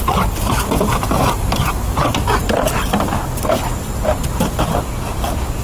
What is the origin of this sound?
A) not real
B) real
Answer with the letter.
B